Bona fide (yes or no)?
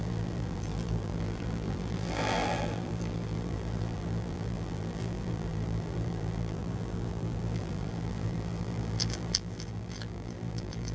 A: no